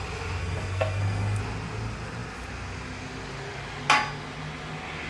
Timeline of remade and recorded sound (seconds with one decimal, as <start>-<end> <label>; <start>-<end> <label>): 0.0-0.4 recorded; 0.4-1.4 remade; 1.4-5.1 recorded